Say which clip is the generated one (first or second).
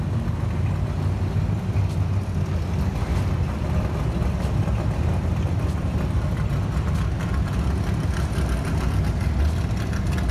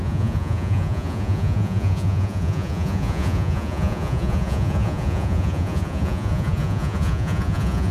second